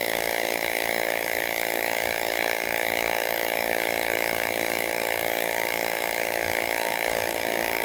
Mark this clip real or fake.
fake